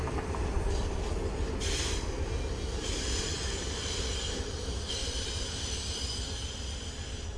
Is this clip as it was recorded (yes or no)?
yes